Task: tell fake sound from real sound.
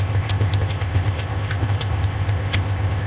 fake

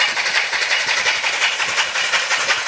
real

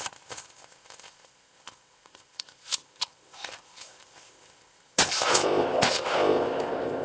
fake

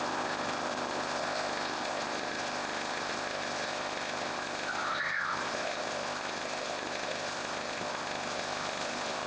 fake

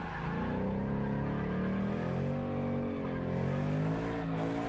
real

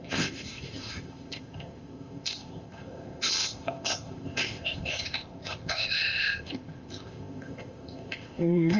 fake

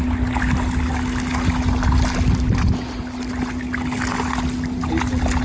real